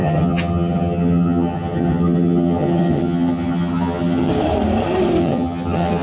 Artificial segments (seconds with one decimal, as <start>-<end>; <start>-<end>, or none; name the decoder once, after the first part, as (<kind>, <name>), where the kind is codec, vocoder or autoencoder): 0.0-4.3 (vocoder, HiFi-GAN); 5.2-6.0

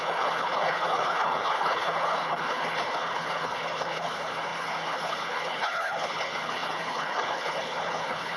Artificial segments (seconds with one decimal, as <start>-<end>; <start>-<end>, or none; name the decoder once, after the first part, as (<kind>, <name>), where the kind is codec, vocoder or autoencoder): 0.0-8.4 (codec, HILCodec)

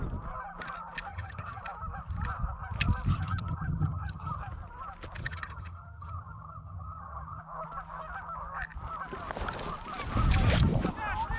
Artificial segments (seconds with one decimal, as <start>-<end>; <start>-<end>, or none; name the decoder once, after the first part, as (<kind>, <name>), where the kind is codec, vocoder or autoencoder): 1.1-1.6 (vocoder, HiFi-GAN); 3.1-4.4; 5.2-7.4

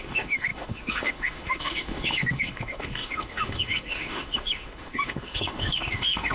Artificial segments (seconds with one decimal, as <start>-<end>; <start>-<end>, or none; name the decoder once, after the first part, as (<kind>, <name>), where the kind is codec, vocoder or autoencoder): 0.0-6.3 (autoencoder, DAC-VAE)

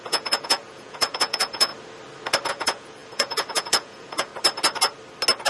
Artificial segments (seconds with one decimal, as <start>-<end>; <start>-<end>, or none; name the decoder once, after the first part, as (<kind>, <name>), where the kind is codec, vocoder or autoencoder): 0.0-1.7 (vocoder, Vocos); 2.5-4.3

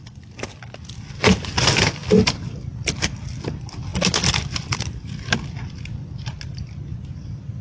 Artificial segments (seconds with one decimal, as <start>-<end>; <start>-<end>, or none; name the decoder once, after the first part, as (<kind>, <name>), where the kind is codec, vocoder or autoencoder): none